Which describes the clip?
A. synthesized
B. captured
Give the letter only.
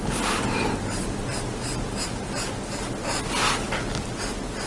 B